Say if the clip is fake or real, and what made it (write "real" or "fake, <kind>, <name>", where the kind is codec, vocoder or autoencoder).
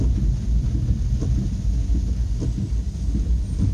real